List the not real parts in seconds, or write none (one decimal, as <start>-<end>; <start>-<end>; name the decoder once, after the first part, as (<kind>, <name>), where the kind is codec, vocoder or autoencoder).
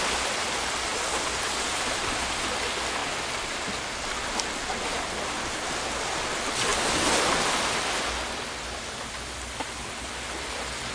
none